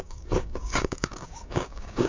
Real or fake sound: fake